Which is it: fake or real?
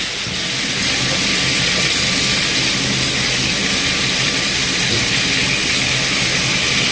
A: real